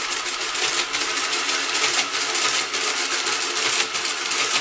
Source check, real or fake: real